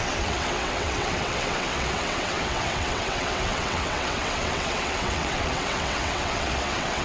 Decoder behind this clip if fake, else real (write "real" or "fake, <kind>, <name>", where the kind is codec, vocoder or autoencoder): fake, vocoder, WaveNeXt